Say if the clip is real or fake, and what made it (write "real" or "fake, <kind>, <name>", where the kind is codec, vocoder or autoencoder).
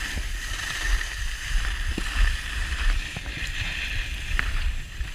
real